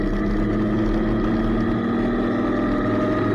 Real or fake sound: real